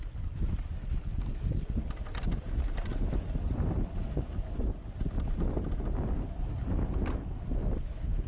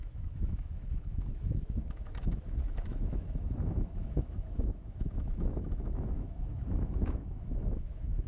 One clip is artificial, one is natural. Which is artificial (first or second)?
second